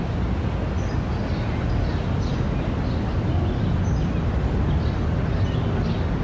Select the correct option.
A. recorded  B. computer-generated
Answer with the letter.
A